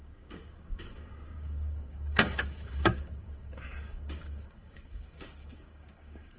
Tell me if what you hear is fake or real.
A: fake